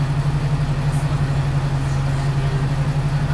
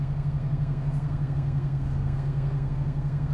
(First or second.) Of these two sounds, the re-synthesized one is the second